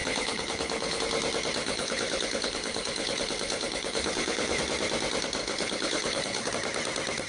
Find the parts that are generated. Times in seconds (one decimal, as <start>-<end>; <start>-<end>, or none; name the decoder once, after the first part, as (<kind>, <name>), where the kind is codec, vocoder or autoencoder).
0.0-1.0 (codec, HILCodec); 1.6-4.6; 5.4-6.5

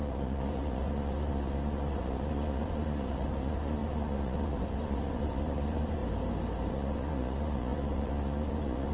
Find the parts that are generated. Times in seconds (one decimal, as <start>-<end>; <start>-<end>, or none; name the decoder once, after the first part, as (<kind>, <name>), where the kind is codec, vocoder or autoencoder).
0.0-6.0 (vocoder, Vocos); 6.7-8.9